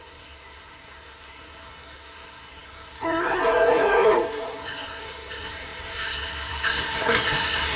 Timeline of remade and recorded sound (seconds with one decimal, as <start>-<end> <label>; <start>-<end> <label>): 0.0-7.8 remade

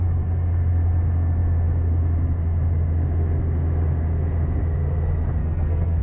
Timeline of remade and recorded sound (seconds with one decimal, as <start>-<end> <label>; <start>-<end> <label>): 0.0-5.4 recorded; 5.4-6.0 remade

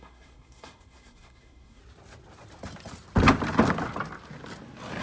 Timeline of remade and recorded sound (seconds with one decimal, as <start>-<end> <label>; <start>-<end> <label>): 0.0-1.8 remade; 1.8-5.0 recorded

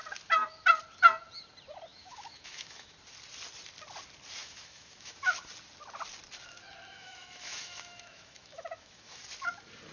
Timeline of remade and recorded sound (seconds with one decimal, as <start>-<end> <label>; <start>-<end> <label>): 0.0-1.9 recorded; 1.9-2.9 remade; 2.9-4.4 recorded; 4.4-5.2 remade; 5.2-6.9 recorded; 6.9-9.2 remade; 9.2-9.9 recorded

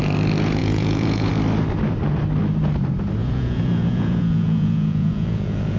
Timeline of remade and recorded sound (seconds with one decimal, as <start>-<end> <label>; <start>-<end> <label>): 0.0-0.6 recorded; 0.6-1.3 remade; 1.3-3.2 recorded; 3.2-5.8 remade

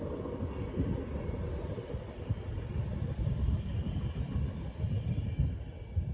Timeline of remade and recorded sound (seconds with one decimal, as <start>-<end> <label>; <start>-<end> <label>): 0.0-6.1 recorded